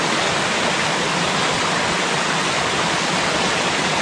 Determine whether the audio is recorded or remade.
recorded